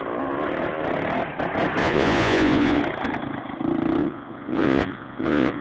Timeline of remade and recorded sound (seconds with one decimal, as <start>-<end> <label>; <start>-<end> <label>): 0.0-1.8 recorded; 1.8-2.8 remade; 2.8-4.0 recorded; 4.0-5.6 remade